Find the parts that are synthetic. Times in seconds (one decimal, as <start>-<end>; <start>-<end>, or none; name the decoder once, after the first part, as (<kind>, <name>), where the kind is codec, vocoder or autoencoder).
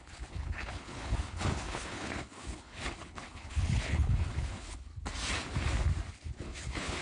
0.0-4.9 (codec, HILCodec); 6.1-7.0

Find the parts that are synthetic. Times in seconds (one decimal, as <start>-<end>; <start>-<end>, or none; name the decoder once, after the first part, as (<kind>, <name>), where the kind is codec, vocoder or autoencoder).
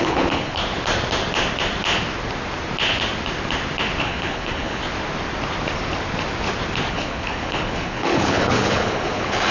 0.0-0.6 (codec, HILCodec); 4.0-4.8; 6.9-9.5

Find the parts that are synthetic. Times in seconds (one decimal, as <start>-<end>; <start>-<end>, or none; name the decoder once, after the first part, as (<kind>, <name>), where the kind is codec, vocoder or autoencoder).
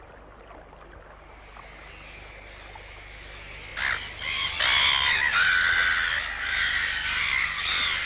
none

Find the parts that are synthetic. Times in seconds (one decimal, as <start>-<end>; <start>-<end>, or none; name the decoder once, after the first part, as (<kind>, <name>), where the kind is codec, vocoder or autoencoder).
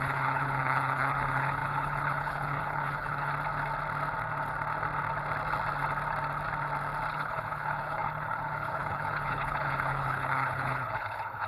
0.0-3.3 (codec, HILCodec); 7.1-11.5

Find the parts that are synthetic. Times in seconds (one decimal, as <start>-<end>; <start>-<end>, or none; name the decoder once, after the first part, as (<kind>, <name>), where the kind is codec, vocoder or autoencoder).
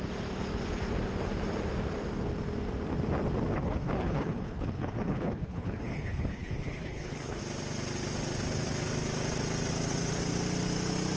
3.5-7.4 (codec, HILCodec)